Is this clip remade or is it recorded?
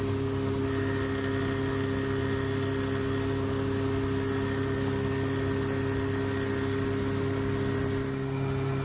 recorded